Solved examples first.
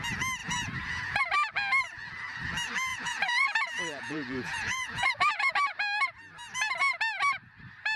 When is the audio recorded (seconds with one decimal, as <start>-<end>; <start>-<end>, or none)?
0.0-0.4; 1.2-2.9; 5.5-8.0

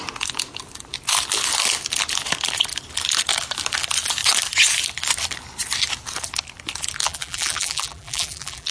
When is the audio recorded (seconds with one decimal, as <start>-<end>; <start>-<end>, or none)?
0.0-7.0

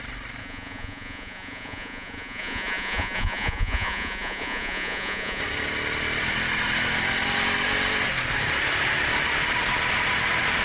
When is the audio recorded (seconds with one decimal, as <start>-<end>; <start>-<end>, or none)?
0.0-0.4; 5.4-10.6

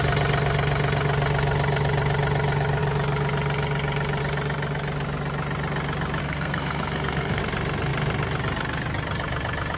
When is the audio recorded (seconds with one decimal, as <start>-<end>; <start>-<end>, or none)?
0.0-6.2; 7.4-9.8

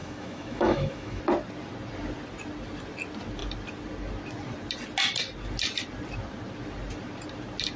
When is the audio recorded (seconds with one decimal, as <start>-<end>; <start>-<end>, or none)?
1.2-7.8

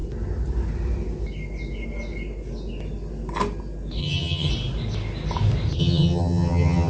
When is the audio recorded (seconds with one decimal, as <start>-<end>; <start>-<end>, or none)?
0.0-4.0; 4.5-5.8

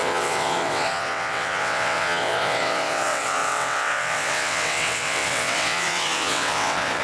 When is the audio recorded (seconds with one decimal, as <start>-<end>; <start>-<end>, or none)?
none

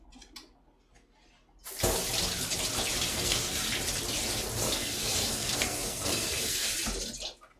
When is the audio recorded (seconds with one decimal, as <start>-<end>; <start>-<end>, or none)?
0.0-3.0; 3.5-4.6; 6.7-7.6